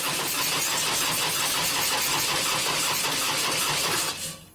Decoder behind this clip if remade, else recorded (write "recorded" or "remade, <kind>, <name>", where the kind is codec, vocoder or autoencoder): recorded